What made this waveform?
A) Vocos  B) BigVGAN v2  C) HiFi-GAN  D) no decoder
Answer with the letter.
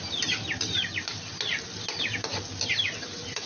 D